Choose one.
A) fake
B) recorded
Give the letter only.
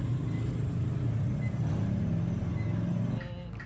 B